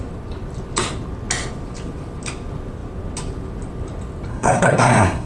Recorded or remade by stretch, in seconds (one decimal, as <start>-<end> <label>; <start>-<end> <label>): 0.0-4.3 recorded; 4.3-5.3 remade